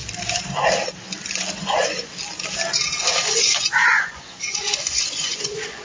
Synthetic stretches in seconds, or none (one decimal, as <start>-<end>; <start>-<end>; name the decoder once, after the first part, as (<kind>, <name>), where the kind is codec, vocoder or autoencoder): 1.6-2.1 (vocoder, Vocos); 3.4-5.8